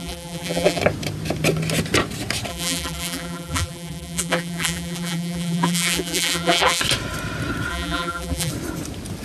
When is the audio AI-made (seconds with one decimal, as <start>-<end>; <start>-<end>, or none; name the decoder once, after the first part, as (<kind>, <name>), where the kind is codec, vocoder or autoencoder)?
0.0-0.8 (vocoder, BigVGAN v2); 2.5-6.8; 7.7-8.5